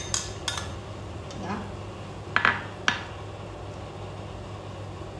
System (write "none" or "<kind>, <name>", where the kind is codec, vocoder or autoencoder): none